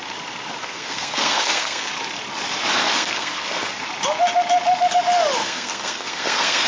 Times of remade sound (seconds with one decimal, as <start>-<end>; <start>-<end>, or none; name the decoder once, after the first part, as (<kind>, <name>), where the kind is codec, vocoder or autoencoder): 0.6-1.9 (codec, SNAC); 2.8-3.8; 5.4-6.7